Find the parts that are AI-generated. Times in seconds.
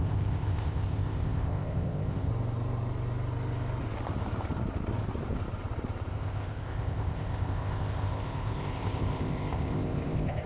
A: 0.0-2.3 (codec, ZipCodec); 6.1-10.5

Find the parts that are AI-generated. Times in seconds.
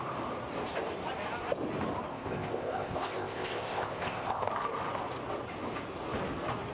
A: 2.1-4.5 (codec, ZipCodec)